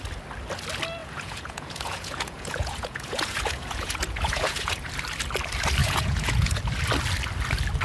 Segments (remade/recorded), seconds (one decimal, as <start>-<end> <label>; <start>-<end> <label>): 0.0-1.0 recorded; 1.0-4.9 remade; 4.9-5.8 recorded; 5.8-6.6 remade; 6.6-7.8 recorded